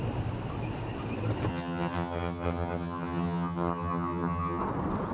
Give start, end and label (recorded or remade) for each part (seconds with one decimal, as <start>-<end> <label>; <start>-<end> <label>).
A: 0.0-1.5 recorded; 1.5-4.6 remade; 4.6-5.1 recorded